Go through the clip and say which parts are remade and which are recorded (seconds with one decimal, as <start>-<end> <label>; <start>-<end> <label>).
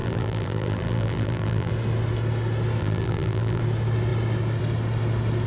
0.0-1.7 remade; 1.7-2.8 recorded; 2.8-3.6 remade; 3.6-5.5 recorded